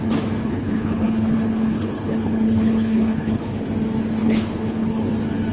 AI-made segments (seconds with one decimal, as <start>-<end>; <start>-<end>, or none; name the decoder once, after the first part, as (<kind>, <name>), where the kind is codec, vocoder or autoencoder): 0.4-3.7 (codec, HILCodec); 4.2-5.1